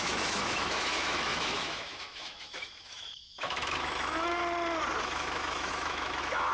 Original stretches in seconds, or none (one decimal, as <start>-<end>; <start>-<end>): 4.4-5.0